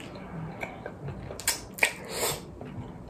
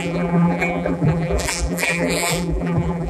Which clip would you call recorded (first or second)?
first